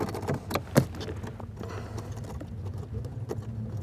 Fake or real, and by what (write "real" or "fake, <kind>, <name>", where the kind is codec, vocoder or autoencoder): real